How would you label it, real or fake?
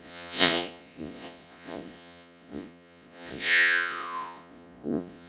fake